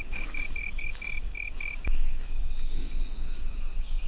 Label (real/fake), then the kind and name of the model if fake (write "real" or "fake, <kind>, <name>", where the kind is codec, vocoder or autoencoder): fake, codec, DAC